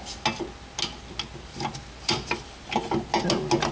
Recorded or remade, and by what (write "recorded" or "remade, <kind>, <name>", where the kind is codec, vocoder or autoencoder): recorded